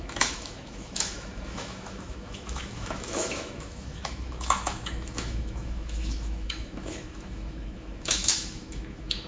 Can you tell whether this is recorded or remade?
remade